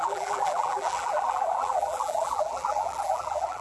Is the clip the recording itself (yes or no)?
no